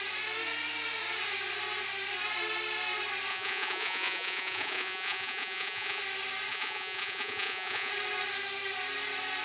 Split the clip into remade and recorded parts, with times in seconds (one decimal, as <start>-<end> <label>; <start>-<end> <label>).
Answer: 0.0-3.3 recorded; 3.3-6.0 remade; 6.0-6.5 recorded; 6.5-7.9 remade; 7.9-9.4 recorded